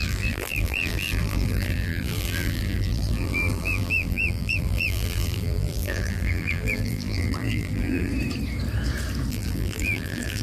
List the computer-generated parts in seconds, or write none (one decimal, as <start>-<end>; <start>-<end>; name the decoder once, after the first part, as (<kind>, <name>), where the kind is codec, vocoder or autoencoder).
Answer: 0.0-8.1 (vocoder, BigVGAN v2); 9.3-10.4